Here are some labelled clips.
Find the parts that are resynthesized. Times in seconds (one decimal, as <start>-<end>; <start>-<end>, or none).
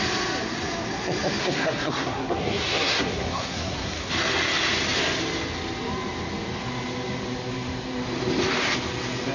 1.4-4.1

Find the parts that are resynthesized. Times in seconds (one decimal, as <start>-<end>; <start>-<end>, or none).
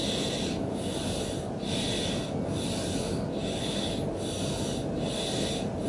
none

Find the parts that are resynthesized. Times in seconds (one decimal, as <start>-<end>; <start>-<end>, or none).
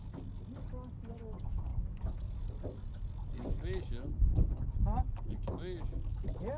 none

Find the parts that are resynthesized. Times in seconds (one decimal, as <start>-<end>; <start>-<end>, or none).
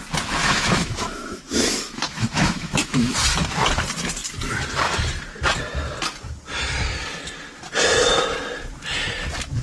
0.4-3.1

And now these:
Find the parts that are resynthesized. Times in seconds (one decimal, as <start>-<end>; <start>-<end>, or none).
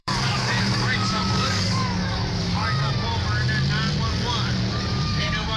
0.0-2.6; 4.7-5.6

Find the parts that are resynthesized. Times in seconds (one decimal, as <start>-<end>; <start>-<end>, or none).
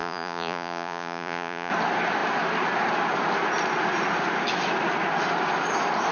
0.0-1.7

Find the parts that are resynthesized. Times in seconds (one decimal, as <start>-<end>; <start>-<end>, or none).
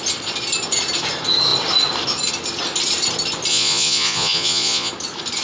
3.5-4.9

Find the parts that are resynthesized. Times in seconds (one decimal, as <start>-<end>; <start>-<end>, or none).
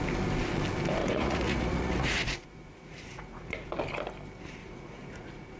1.0-3.5; 4.6-5.6